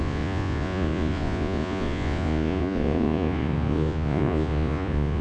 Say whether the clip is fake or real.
fake